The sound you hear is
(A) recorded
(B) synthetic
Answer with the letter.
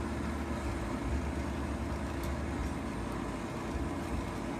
A